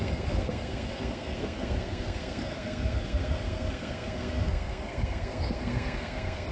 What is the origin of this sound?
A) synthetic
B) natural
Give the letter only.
A